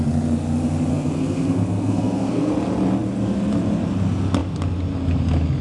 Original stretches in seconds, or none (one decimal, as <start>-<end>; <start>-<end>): 0.0-0.9; 2.5-5.6